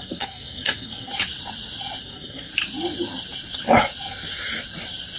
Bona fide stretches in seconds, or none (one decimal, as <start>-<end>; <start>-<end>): 1.1-2.0; 2.5-5.2